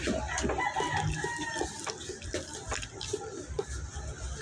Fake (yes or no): no